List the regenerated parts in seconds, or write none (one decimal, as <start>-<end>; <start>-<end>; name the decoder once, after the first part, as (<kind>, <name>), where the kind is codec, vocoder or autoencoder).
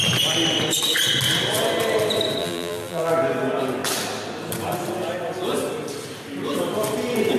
2.4-3.1 (vocoder, BigVGAN v2)